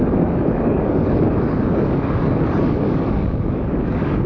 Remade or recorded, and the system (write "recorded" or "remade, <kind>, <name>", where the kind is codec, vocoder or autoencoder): remade, codec, DAC